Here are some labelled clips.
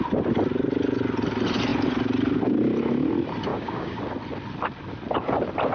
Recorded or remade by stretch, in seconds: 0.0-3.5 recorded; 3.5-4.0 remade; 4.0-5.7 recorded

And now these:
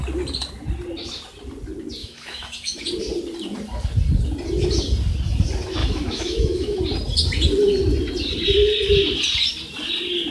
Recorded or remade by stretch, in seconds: 0.0-2.0 recorded; 2.0-2.8 remade; 2.8-5.8 recorded; 5.8-6.8 remade; 6.8-10.3 recorded

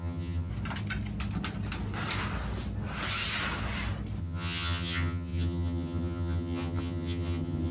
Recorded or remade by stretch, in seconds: 0.0-0.5 remade; 0.5-4.2 recorded; 4.2-7.7 remade

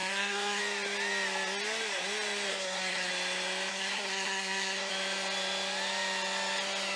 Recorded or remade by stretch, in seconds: 0.0-0.6 remade; 0.6-2.5 recorded; 2.5-3.1 remade; 3.1-3.7 recorded; 3.7-4.9 remade; 4.9-7.0 recorded